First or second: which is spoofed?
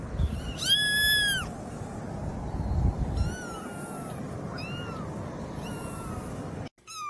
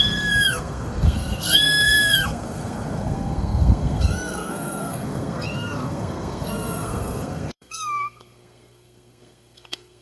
second